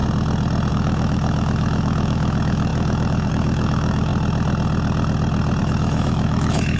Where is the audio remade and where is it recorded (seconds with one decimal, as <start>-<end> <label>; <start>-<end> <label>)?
0.0-0.7 recorded; 0.7-4.1 remade; 4.1-5.6 recorded; 5.6-6.8 remade